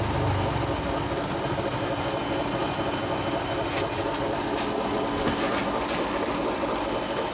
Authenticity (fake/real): real